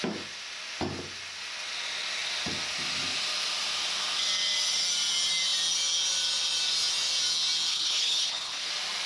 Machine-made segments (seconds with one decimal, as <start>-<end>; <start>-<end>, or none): 7.7-8.7